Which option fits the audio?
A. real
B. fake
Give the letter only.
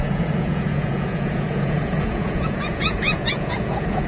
B